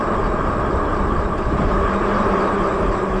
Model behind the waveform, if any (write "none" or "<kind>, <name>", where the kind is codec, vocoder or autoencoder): vocoder, BigVGAN v2